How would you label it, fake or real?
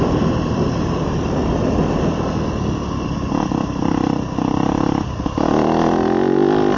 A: real